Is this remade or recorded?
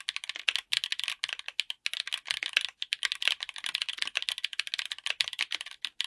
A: recorded